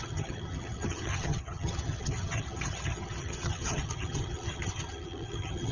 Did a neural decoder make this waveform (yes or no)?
yes